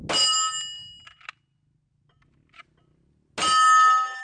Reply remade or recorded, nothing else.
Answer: recorded